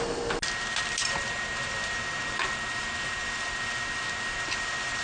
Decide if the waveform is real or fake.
real